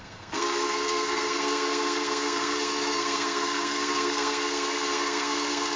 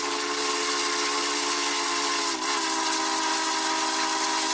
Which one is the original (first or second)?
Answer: second